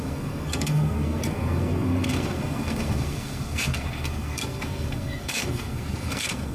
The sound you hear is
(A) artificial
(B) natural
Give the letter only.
A